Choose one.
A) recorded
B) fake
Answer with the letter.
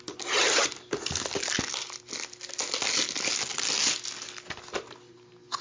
A